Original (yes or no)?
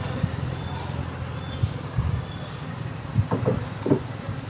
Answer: yes